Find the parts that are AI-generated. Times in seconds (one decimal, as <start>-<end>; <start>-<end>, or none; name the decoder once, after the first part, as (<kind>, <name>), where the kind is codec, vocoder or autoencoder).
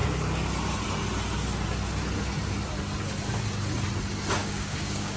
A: 4.4-5.2 (codec, DAC)